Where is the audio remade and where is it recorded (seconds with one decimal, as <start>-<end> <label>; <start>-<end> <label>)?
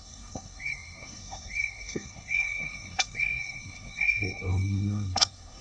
0.0-5.6 remade